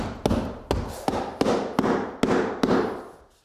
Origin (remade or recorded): recorded